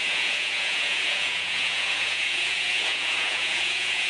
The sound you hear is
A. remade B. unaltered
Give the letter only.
A